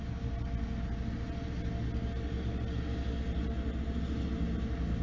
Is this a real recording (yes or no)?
yes